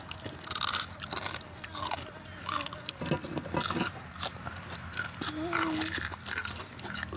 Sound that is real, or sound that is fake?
real